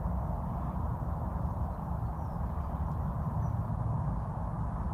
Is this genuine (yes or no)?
yes